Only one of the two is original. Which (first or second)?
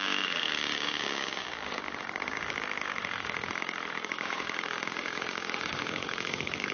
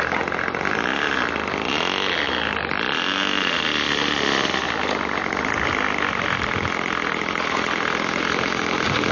second